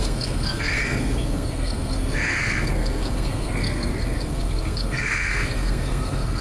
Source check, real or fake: fake